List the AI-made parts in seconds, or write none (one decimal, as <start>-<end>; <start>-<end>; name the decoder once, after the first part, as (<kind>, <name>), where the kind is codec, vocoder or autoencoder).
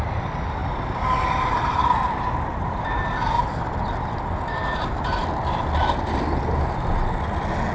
0.6-2.8 (vocoder, BigVGAN v2)